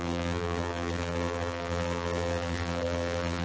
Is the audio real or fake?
fake